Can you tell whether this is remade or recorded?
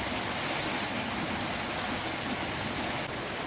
recorded